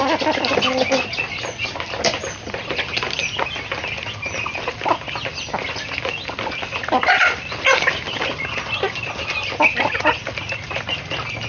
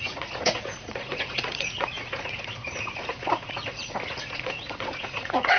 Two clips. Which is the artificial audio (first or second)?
second